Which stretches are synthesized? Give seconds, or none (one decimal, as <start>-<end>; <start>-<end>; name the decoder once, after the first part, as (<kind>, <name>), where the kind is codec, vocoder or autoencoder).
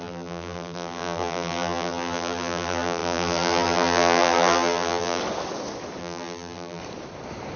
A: 0.0-5.2 (vocoder, BigVGAN v2); 6.0-6.8